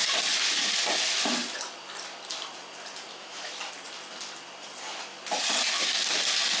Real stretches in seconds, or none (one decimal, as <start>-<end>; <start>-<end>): 0.0-3.1; 3.7-6.6